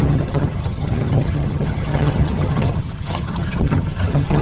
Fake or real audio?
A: fake